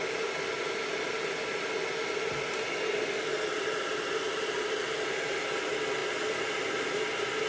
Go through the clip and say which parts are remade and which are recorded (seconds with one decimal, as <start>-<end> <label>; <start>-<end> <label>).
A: 0.0-7.5 recorded